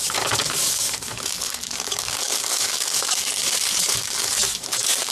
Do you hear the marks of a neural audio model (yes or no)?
yes